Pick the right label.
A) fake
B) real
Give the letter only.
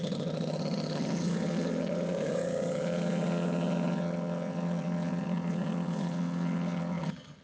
A